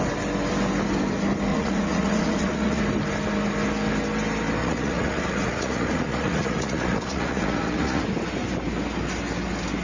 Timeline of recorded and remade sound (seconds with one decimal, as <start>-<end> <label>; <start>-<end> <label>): 0.0-1.5 recorded; 1.5-2.8 remade; 2.8-4.6 recorded; 4.6-8.0 remade; 8.0-9.8 recorded